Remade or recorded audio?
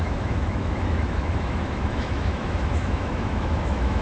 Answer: remade